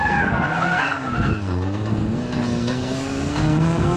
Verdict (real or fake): fake